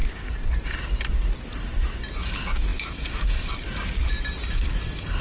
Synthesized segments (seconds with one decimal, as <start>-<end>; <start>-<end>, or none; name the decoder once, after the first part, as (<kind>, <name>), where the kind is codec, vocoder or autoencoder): 0.0-0.8 (vocoder, BigVGAN v2)